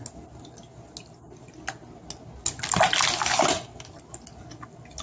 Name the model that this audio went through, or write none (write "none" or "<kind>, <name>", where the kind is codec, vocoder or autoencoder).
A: none